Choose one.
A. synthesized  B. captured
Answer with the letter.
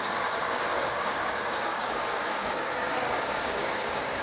A